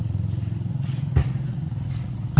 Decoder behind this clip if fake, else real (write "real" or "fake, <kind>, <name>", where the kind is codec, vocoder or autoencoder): fake, vocoder, Vocos